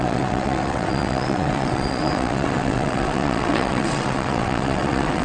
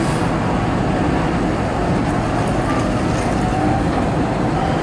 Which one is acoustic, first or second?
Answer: second